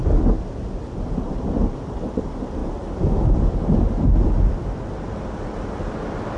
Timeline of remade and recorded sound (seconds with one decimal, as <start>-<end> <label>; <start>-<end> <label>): 0.0-6.4 recorded